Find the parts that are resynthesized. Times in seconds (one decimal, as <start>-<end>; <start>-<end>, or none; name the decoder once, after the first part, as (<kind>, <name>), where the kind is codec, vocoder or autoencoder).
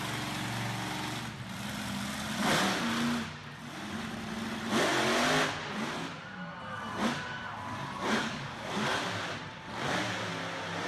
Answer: 8.2-9.0 (codec, DAC)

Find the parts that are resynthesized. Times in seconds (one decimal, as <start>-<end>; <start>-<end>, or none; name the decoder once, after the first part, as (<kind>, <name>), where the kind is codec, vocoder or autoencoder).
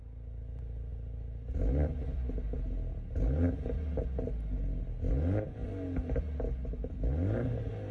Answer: none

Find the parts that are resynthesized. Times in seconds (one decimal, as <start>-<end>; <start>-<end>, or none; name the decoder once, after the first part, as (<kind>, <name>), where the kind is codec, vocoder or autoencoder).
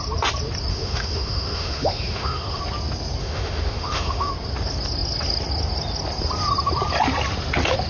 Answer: 0.7-2.6 (autoencoder, DAC-VAE); 3.2-4.3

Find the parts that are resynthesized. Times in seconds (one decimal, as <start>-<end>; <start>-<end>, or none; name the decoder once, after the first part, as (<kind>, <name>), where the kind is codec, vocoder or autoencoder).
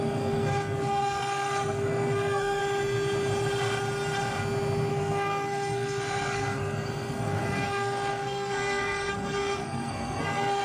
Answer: 0.0-2.6 (codec, SNAC); 4.9-10.6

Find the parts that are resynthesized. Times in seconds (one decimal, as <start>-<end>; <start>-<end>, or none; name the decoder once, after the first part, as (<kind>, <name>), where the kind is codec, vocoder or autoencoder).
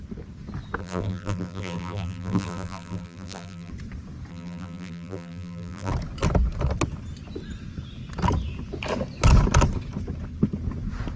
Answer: 0.8-3.7 (vocoder, BigVGAN v2); 4.3-5.9